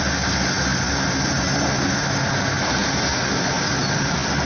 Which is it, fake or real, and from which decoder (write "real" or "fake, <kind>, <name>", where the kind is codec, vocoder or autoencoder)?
real